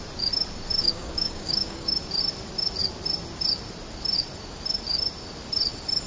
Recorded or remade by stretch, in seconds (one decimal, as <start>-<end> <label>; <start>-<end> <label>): 0.0-0.8 recorded; 0.8-2.0 remade; 2.0-6.1 recorded